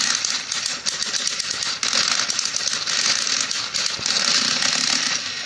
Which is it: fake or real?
real